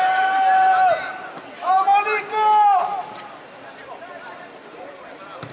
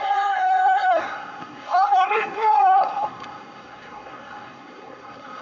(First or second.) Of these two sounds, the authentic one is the first